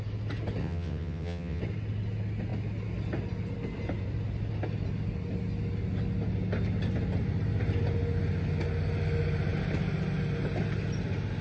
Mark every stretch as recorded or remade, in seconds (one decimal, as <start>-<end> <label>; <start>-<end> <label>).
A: 0.0-0.6 recorded; 0.6-1.6 remade; 1.6-11.4 recorded